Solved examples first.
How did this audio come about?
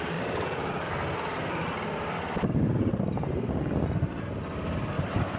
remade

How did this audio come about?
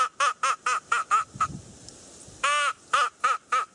recorded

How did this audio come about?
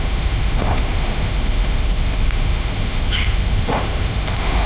remade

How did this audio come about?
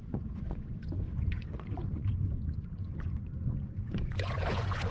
remade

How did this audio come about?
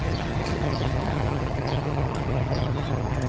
remade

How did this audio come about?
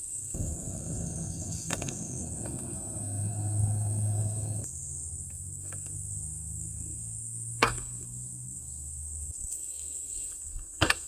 remade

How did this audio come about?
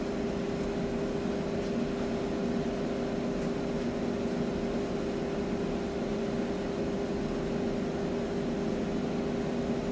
recorded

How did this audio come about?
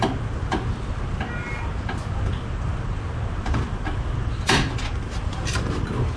recorded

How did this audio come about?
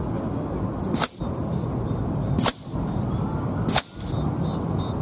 recorded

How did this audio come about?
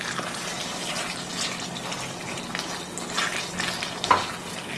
recorded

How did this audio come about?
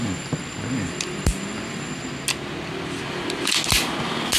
recorded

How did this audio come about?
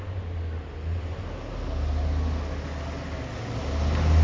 recorded